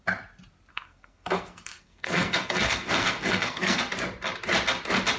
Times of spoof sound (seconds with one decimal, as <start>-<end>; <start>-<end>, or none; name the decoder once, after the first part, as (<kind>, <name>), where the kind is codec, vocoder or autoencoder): 0.7-3.8 (codec, SNAC)